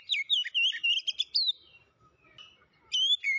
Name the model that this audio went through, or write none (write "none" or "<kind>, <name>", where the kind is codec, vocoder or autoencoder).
none